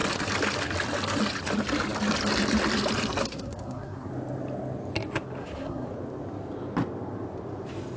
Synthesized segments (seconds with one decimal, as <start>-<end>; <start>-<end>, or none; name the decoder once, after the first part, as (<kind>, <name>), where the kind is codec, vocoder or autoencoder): 3.2-4.1 (codec, SNAC); 5.4-5.9